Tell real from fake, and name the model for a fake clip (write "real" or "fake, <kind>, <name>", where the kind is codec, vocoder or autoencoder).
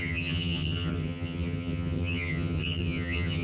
fake, vocoder, HiFi-GAN